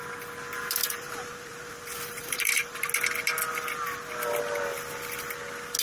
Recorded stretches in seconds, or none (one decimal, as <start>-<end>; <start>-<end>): 0.0-0.8; 2.9-5.8

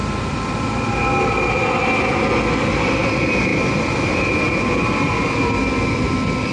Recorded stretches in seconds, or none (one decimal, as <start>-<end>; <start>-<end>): 0.0-6.5

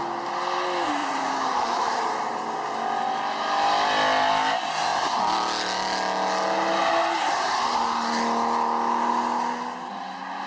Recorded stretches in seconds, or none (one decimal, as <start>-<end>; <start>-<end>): 0.0-1.0; 2.4-10.5

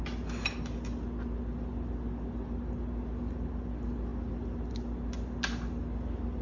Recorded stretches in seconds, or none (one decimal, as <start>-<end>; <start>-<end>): 0.0-6.4

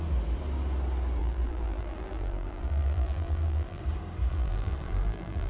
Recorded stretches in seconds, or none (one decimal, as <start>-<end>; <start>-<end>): 0.0-1.2; 3.8-4.3